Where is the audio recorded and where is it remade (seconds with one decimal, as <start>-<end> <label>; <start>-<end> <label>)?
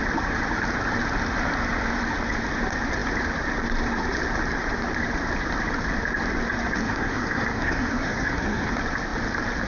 0.0-6.8 recorded; 6.8-8.7 remade; 8.7-9.7 recorded